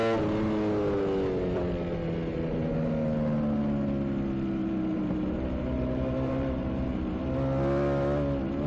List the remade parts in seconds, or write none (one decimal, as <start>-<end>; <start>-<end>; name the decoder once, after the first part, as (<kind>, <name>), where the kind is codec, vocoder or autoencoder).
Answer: 2.3-2.9 (vocoder, BigVGAN v2); 4.6-7.2